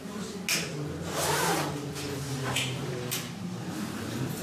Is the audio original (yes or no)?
yes